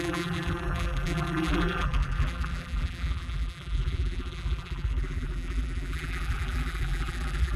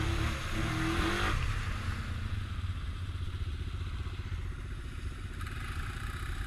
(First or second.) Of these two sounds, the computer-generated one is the first